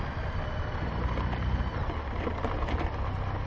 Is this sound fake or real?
real